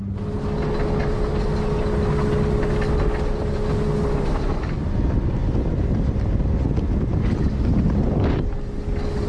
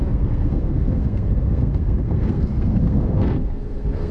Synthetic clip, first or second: second